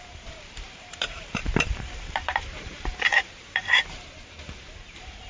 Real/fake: fake